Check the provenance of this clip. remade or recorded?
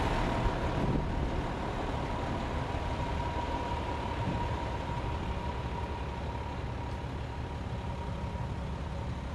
recorded